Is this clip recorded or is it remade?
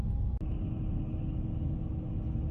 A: recorded